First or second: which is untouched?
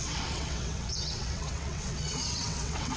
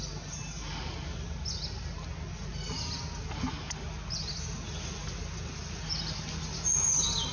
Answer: second